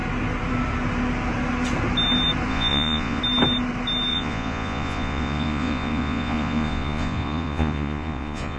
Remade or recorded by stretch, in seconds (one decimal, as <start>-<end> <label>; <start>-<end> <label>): 0.0-2.5 recorded; 2.5-3.2 remade; 3.2-4.1 recorded; 4.1-8.6 remade